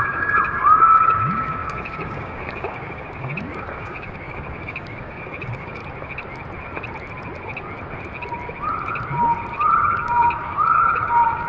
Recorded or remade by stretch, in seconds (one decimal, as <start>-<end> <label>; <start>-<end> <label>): 0.0-5.8 remade; 5.8-9.8 recorded; 9.8-11.5 remade